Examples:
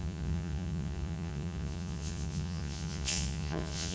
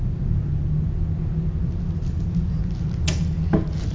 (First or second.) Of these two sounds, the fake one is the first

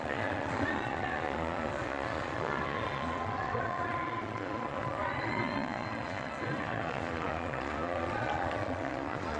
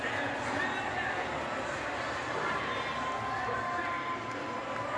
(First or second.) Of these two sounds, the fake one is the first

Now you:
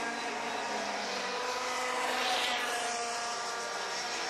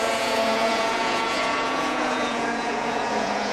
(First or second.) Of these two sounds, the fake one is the second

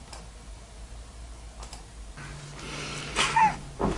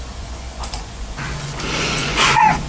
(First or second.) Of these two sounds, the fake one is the second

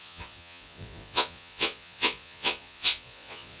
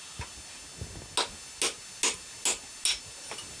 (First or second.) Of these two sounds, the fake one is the first